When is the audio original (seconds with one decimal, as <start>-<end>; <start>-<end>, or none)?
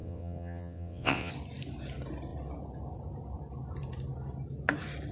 1.3-5.1